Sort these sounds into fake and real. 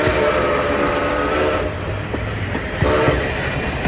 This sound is fake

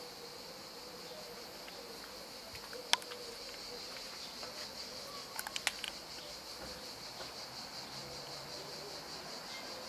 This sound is real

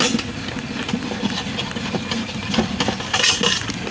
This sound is real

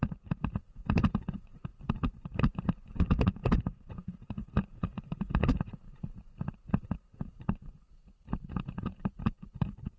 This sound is fake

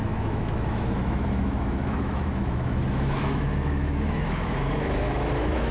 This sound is fake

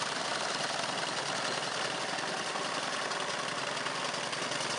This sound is real